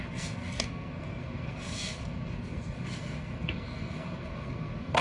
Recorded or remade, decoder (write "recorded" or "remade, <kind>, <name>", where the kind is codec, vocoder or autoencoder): remade, codec, SNAC